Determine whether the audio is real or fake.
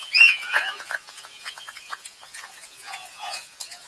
fake